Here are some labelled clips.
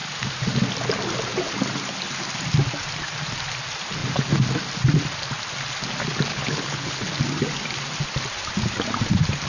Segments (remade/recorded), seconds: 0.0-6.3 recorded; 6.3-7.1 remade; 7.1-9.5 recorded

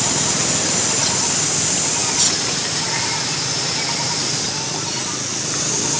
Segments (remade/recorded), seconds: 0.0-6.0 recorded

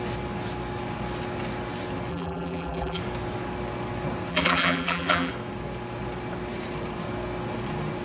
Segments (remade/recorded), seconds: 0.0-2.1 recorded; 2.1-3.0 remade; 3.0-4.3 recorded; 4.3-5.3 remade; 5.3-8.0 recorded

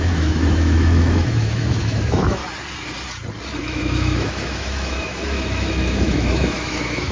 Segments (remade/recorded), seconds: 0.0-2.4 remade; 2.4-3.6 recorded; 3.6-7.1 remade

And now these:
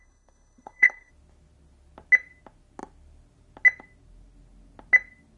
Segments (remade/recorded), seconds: 0.0-1.1 remade; 1.1-5.4 recorded